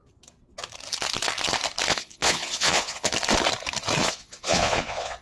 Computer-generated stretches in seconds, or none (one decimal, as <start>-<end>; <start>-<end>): 1.9-3.1; 4.0-5.2